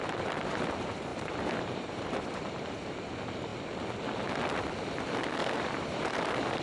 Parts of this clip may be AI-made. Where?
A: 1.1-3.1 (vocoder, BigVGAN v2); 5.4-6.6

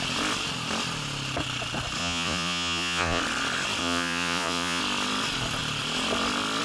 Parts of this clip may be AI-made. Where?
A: 2.0-3.2 (vocoder, Vocos); 3.8-4.8